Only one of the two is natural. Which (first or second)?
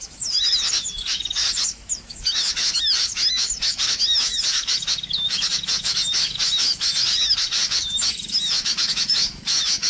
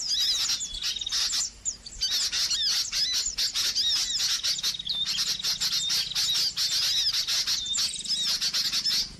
second